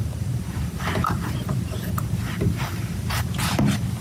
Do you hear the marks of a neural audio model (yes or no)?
no